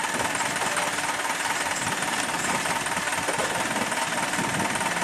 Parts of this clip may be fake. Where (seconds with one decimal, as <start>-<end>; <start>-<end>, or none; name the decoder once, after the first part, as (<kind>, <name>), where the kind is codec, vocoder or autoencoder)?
none